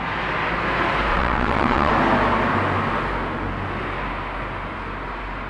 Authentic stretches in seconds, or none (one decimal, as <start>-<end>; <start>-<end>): 0.0-1.1; 1.9-5.5